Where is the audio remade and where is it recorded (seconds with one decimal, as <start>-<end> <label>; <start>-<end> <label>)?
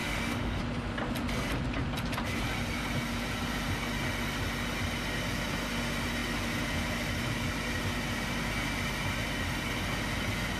0.0-0.6 remade; 0.6-10.6 recorded